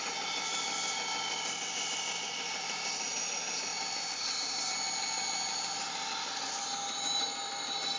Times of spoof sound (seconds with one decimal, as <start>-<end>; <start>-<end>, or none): none